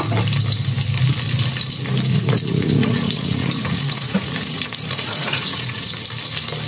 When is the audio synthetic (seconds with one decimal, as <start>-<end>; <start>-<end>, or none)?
2.1-5.9